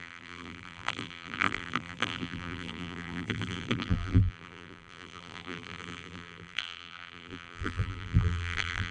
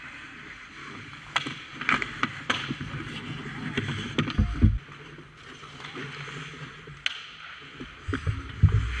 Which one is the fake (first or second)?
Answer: first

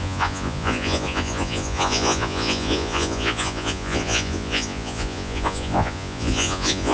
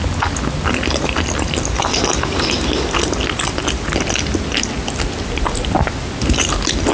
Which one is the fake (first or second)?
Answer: first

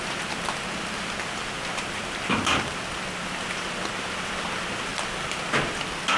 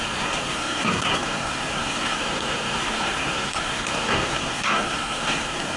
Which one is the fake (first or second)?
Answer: second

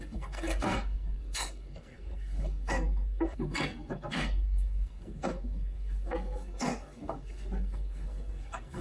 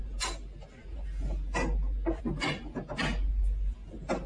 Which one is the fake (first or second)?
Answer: first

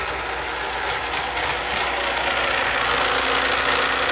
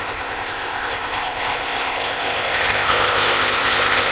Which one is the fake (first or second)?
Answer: second